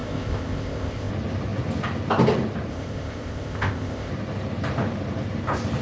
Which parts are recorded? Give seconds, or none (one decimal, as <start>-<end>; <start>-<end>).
1.1-2.7; 4.1-5.8